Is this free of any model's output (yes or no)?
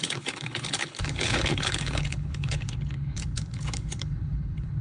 no